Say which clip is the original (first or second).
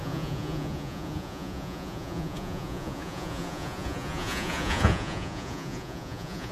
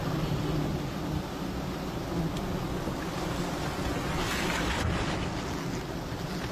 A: second